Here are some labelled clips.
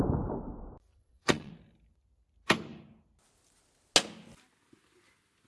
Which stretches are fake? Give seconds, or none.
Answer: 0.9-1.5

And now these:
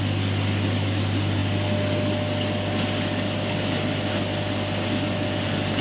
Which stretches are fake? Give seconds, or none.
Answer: none

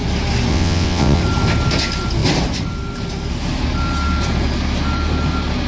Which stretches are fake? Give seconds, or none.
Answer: 0.5-1.2

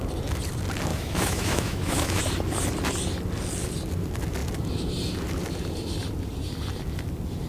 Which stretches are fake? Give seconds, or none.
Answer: 0.9-2.2

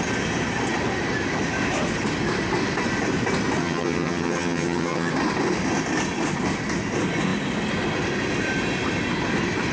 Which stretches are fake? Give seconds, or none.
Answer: 3.6-5.1